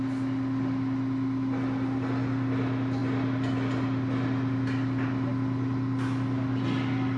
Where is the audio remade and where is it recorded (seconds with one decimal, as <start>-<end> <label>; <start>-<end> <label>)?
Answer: 0.0-7.2 recorded